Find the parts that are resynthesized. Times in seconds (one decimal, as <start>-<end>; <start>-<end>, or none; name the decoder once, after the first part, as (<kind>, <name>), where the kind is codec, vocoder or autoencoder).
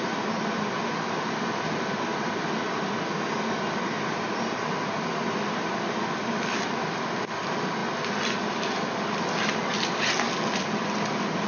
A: none